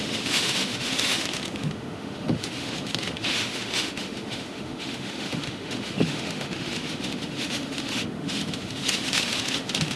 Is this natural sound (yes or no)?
no